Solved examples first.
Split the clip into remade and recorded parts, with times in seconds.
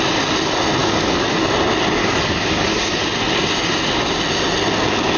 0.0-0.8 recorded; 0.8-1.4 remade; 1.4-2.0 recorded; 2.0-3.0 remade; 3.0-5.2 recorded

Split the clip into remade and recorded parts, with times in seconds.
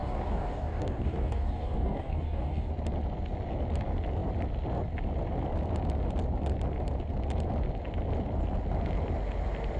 0.0-2.7 remade; 2.7-9.8 recorded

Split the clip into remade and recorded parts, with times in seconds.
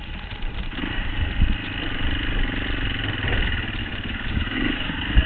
0.0-3.8 recorded; 3.8-5.3 remade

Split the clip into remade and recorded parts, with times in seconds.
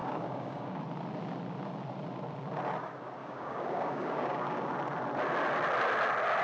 0.0-0.8 remade; 0.8-3.2 recorded; 3.2-4.7 remade; 4.7-6.4 recorded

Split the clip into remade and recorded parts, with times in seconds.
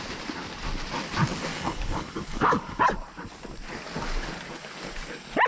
0.0-1.5 recorded; 1.5-2.8 remade; 2.8-5.5 recorded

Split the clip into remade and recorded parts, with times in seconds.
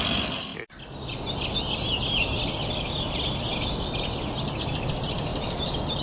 0.0-6.0 recorded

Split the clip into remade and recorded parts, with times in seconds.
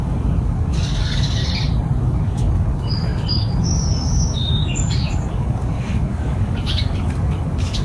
0.0-1.4 remade; 1.4-2.0 recorded; 2.0-7.8 remade